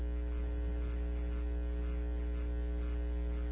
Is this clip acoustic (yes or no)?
yes